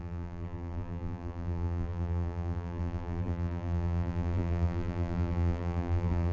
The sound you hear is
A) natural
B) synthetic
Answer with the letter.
B